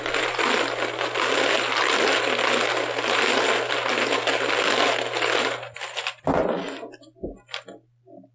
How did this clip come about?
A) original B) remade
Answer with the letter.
A